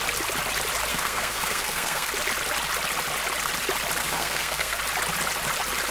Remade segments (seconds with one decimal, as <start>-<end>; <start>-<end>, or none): 0.9-2.1; 4.0-4.8